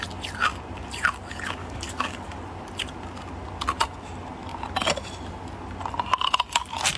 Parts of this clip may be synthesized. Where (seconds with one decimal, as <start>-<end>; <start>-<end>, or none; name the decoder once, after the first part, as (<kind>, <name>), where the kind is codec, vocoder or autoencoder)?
1.6-2.4 (codec, DAC)